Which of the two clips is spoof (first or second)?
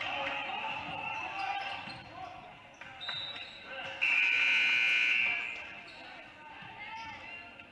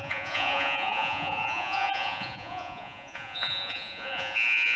second